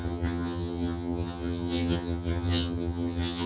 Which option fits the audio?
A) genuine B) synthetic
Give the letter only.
B